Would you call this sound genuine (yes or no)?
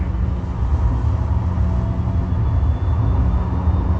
yes